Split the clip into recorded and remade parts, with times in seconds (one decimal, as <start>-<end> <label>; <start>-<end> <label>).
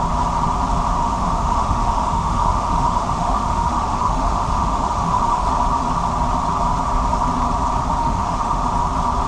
0.0-1.0 recorded; 1.0-5.5 remade; 5.5-8.0 recorded; 8.0-8.6 remade; 8.6-9.3 recorded